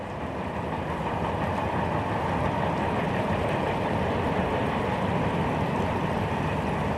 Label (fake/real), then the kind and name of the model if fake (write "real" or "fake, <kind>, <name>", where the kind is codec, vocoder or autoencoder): fake, vocoder, BigVGAN v2